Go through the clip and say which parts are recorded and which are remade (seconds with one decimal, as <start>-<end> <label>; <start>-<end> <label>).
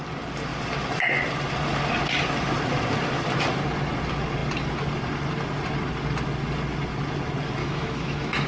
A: 0.0-7.6 recorded; 7.6-8.5 remade